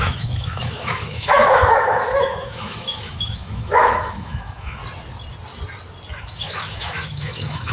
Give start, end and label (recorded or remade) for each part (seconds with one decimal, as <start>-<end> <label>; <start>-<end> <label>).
0.0-4.8 remade; 4.8-6.2 recorded; 6.2-7.7 remade